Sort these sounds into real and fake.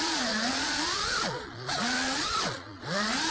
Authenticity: fake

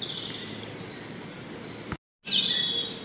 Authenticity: real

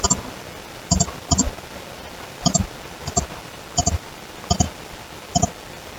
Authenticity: real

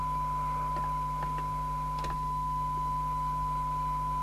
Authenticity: real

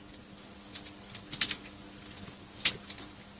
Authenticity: real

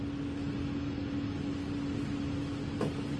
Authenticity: real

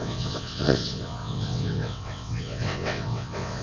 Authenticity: fake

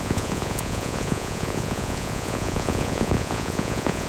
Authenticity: fake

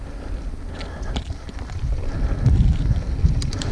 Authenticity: real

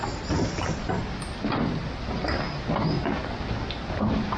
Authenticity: real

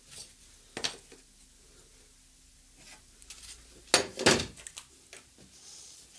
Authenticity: real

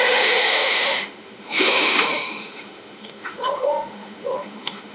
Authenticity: fake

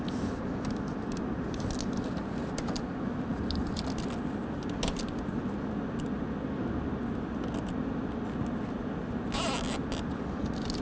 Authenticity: real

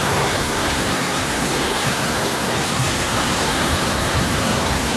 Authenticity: fake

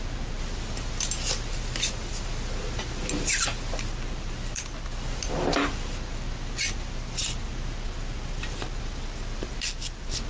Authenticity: real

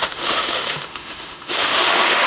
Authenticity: fake